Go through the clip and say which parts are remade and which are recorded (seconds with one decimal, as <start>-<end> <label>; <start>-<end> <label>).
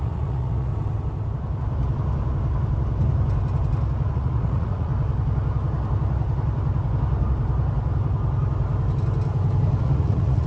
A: 0.0-0.7 remade; 0.7-4.1 recorded; 4.1-4.9 remade; 4.9-9.8 recorded; 9.8-10.5 remade